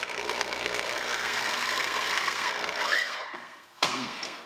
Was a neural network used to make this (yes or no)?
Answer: yes